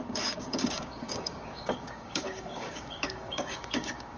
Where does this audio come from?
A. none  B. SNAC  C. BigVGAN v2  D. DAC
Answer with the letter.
D